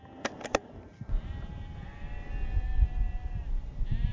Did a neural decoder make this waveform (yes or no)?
no